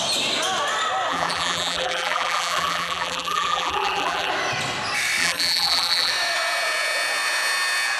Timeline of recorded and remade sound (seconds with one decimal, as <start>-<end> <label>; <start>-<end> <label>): 0.0-1.1 recorded; 1.1-4.3 remade; 4.3-5.2 recorded; 5.2-6.1 remade; 6.1-8.0 recorded